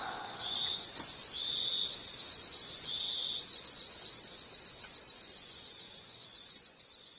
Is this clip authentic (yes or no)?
no